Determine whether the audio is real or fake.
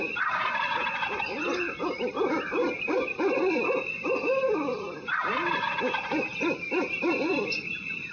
fake